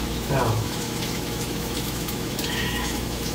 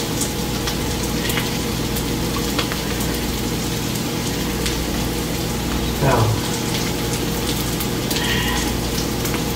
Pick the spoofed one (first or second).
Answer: first